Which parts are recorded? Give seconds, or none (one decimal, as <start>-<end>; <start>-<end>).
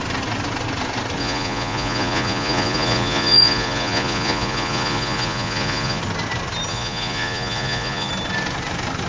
0.0-1.2; 6.0-6.7; 8.1-9.1